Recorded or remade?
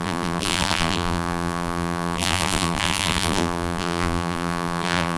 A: remade